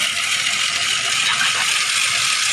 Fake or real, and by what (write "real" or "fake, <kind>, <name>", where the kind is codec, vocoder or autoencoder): real